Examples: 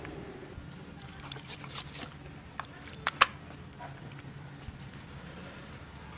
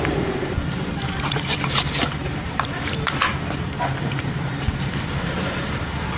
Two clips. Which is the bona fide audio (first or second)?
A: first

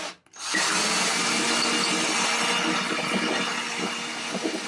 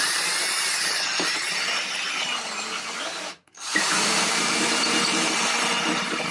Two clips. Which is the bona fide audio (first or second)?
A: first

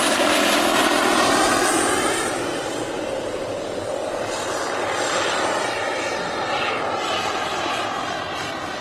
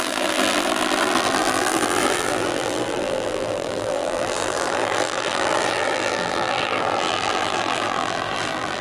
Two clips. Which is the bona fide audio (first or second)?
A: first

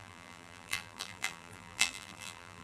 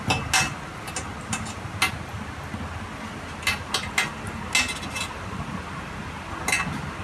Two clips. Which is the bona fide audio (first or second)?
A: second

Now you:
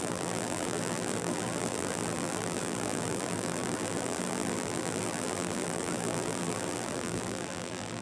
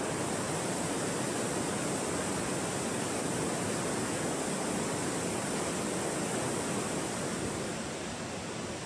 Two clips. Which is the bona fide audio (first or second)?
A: second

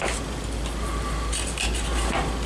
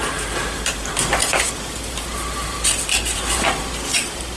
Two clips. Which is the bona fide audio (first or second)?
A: first